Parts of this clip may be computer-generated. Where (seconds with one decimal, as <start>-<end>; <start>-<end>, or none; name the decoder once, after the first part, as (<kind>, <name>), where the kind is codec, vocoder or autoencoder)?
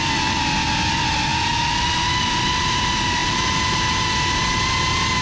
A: none